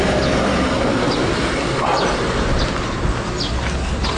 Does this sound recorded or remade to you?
recorded